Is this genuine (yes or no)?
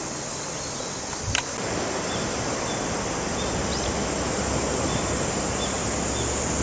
yes